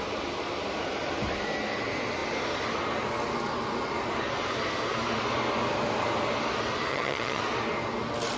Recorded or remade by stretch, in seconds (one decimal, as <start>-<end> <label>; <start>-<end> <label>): 0.0-6.9 recorded; 6.9-7.4 remade; 7.4-8.4 recorded